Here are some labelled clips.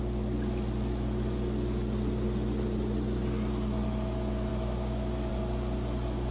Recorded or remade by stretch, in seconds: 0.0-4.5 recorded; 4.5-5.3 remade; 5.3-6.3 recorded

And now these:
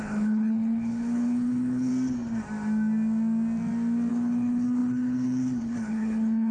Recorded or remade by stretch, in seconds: 0.0-1.9 remade; 1.9-4.1 recorded; 4.1-6.5 remade

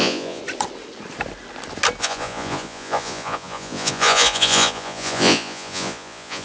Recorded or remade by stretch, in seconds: 0.0-0.4 remade; 0.4-2.0 recorded; 2.0-6.4 remade

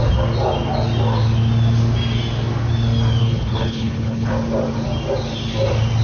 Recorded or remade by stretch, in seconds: 0.0-3.2 recorded; 3.2-4.3 remade; 4.3-6.0 recorded

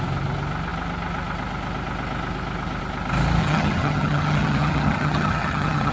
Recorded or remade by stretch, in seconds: 0.0-3.4 recorded; 3.4-5.9 remade

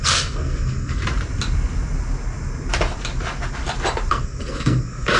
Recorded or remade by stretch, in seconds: 0.0-1.0 remade; 1.0-4.1 recorded; 4.1-5.2 remade

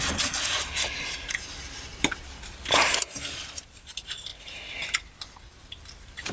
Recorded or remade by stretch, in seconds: 0.0-1.9 remade; 1.9-2.7 recorded; 2.7-6.3 remade